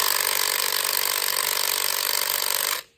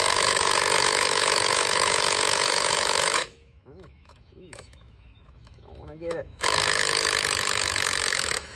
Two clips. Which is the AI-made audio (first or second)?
second